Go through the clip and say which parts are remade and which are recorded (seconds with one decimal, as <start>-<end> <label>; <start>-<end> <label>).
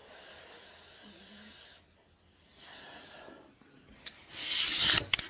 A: 0.0-2.5 recorded; 2.5-3.9 remade; 3.9-5.3 recorded